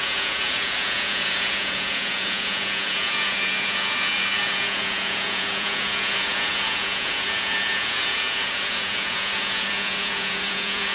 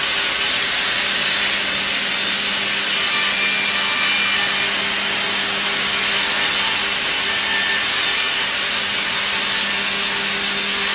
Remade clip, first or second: first